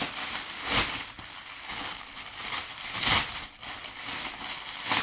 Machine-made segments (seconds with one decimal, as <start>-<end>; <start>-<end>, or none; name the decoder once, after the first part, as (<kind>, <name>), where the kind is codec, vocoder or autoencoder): 1.7-2.4 (codec, HILCodec)